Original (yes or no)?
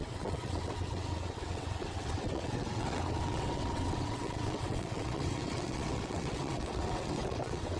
no